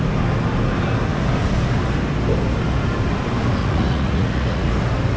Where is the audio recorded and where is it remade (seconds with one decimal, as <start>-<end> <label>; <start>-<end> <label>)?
0.0-3.6 recorded; 3.6-4.7 remade; 4.7-5.2 recorded